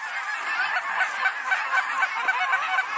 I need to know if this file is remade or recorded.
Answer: recorded